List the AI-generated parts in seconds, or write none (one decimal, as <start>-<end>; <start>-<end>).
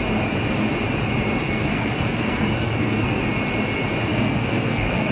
1.4-3.2; 4.1-5.1